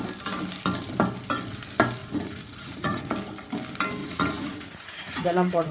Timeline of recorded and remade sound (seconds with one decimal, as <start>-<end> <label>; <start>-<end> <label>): 0.0-2.0 recorded; 2.0-3.1 remade; 3.1-4.0 recorded; 4.0-5.7 remade